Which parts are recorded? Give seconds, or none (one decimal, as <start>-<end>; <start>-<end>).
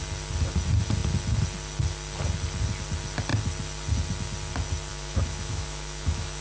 0.0-4.9